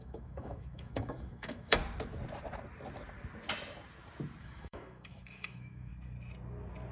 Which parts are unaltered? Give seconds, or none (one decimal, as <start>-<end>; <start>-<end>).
1.8-4.4; 5.9-6.9